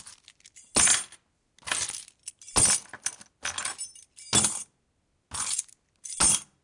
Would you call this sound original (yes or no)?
yes